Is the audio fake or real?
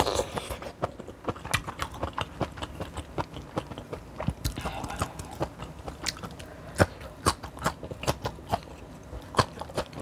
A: real